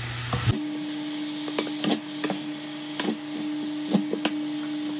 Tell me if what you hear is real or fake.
real